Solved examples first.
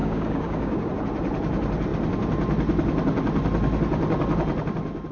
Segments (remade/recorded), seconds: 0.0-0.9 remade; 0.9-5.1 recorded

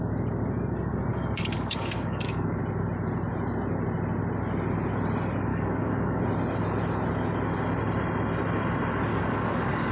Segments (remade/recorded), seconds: 0.0-1.1 recorded; 1.1-2.6 remade; 2.6-5.5 recorded; 5.5-6.2 remade; 6.2-9.1 recorded; 9.1-9.9 remade

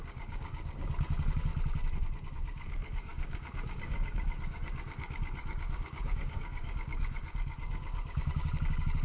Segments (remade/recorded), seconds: 0.0-1.5 remade; 1.5-2.3 recorded; 2.3-9.0 remade

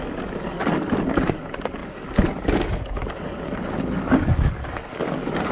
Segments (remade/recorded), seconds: 0.0-5.5 remade